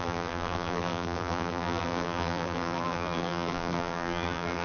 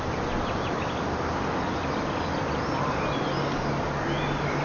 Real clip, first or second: second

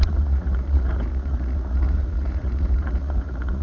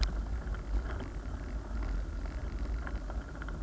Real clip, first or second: second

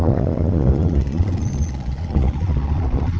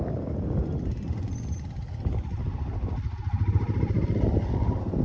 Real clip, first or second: second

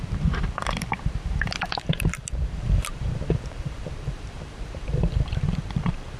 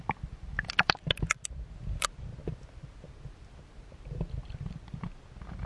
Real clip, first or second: second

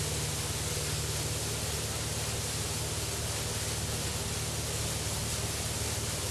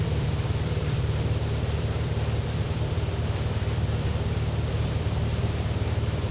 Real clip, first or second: first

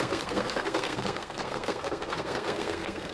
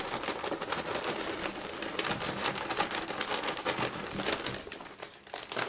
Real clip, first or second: second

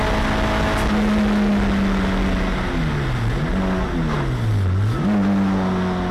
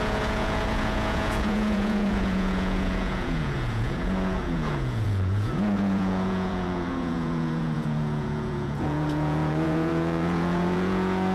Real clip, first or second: first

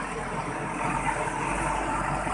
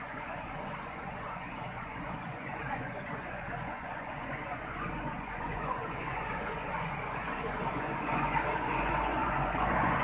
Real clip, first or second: first